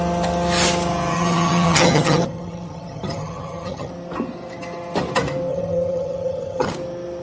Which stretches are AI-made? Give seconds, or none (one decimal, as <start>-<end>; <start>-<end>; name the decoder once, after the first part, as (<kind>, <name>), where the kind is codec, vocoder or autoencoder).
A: 1.1-3.9 (vocoder, HiFi-GAN); 5.5-6.7